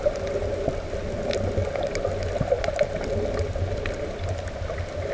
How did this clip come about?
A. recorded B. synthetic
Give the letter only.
A